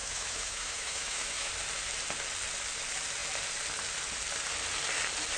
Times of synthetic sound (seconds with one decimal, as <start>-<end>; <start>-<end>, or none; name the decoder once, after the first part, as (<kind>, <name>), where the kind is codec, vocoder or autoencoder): 0.0-1.5 (autoencoder, DAC-VAE)